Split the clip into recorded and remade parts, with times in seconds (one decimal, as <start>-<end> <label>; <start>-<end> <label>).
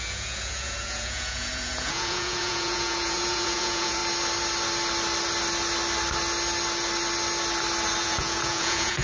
0.0-4.0 remade; 4.0-8.0 recorded; 8.0-9.0 remade